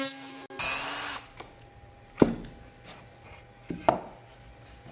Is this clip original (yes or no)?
yes